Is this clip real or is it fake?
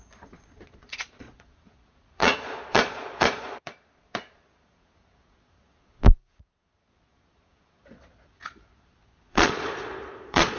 fake